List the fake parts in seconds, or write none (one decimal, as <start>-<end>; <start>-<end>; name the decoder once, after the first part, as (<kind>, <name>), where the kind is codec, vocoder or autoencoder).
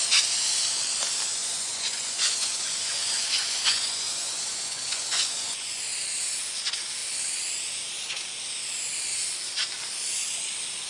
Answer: 1.4-5.8 (vocoder, Vocos)